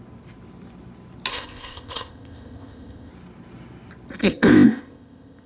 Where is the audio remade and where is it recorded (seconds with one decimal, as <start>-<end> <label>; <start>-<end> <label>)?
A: 0.0-1.3 recorded; 1.3-3.1 remade; 3.1-4.2 recorded; 4.2-5.5 remade